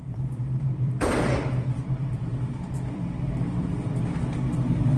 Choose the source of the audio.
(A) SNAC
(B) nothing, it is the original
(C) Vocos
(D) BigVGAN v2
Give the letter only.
D